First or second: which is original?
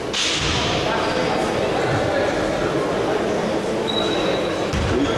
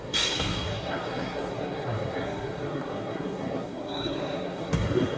first